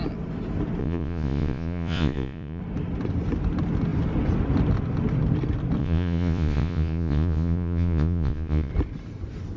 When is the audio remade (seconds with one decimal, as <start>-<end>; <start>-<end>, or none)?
0.8-2.6; 5.8-8.7